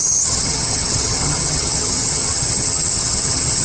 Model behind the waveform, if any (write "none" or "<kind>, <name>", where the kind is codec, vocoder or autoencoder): vocoder, HiFi-GAN